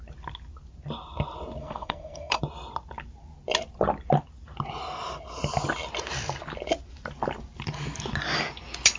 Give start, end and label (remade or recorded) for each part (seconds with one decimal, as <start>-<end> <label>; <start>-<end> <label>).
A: 0.0-1.6 recorded; 1.6-2.4 remade; 2.4-9.0 recorded